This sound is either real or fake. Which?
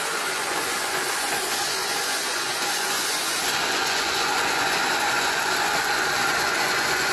fake